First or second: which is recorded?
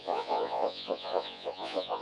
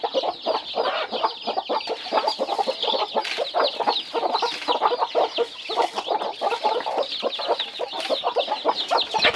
second